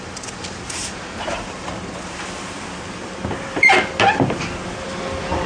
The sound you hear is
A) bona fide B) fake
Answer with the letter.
B